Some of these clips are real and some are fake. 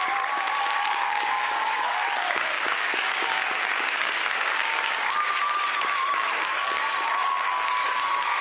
fake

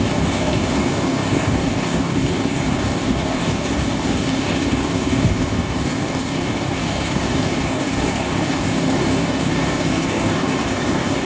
fake